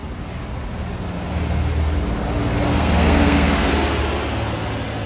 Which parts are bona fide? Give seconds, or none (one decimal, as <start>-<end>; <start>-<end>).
0.0-2.7; 3.7-5.1